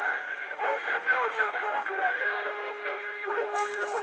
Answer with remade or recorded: remade